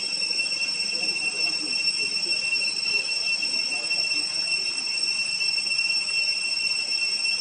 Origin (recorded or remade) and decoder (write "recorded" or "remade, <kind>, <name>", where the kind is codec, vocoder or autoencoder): recorded